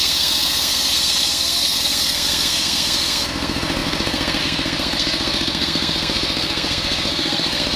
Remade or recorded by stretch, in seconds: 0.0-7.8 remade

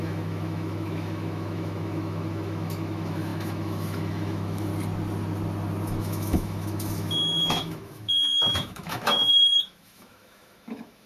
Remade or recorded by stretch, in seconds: 0.0-4.7 remade; 4.7-6.0 recorded; 6.0-11.1 remade

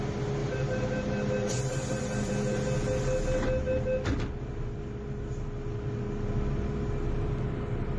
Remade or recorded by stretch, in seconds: 0.0-0.4 recorded; 0.4-2.3 remade; 2.3-8.0 recorded